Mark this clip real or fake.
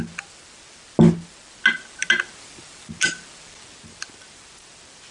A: real